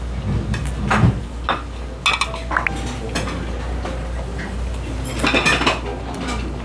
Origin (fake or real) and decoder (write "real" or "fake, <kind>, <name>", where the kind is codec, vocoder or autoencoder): real